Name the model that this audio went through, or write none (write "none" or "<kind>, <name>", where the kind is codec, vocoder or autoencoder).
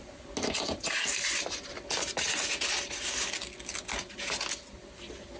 none